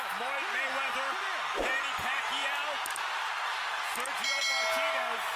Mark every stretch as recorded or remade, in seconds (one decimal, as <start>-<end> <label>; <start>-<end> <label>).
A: 0.0-5.4 recorded